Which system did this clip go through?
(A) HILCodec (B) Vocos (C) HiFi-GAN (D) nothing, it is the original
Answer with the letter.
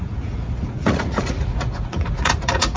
B